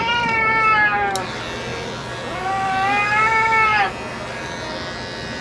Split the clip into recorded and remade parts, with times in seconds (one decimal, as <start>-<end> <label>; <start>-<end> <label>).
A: 0.0-5.4 recorded